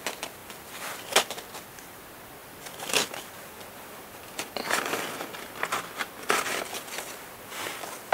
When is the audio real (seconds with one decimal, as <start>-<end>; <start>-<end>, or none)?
0.0-2.4; 3.4-8.1

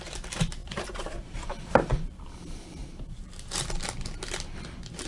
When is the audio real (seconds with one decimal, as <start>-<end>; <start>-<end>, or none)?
0.0-0.6; 2.3-2.8; 3.3-5.1